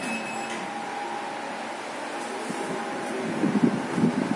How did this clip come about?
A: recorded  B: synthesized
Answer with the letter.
A